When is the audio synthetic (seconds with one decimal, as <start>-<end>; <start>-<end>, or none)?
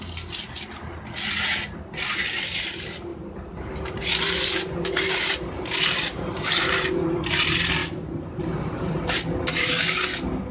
3.1-7.3; 7.8-9.7